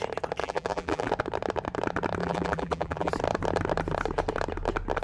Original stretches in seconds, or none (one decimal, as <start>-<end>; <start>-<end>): 0.0-0.4; 1.1-2.2; 3.1-5.0